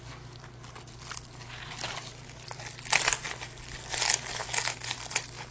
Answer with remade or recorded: recorded